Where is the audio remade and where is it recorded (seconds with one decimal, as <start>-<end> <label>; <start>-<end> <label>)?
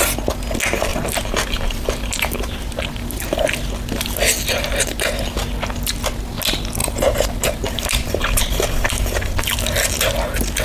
0.0-0.9 recorded; 0.9-2.8 remade; 2.8-6.8 recorded; 6.8-8.4 remade; 8.4-10.6 recorded